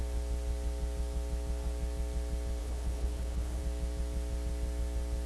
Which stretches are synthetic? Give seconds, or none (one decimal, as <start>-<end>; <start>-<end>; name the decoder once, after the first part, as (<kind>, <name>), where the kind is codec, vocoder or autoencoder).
2.6-3.6 (codec, HILCodec)